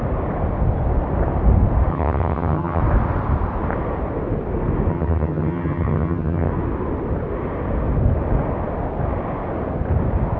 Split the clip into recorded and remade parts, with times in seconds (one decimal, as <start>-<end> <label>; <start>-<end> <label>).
0.0-1.9 recorded; 1.9-2.8 remade; 2.8-4.9 recorded; 4.9-6.5 remade; 6.5-10.4 recorded